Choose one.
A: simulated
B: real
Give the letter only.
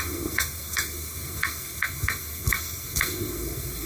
A